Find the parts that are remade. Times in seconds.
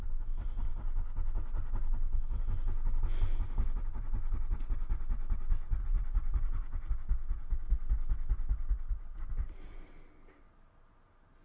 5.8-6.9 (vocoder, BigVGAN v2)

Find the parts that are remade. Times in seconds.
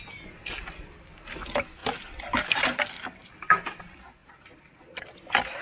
4.2-5.0 (vocoder, BigVGAN v2)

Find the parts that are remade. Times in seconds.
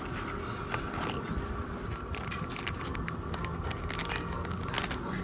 none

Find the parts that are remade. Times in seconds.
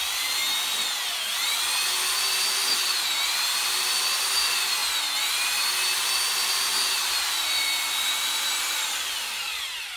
0.0-0.4 (vocoder, BigVGAN v2); 2.2-4.8; 6.4-10.0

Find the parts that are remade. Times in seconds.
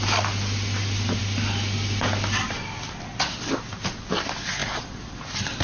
none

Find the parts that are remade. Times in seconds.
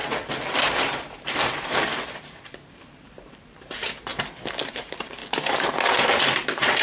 0.8-4.1 (vocoder, BigVGAN v2); 4.7-5.2; 6.2-6.8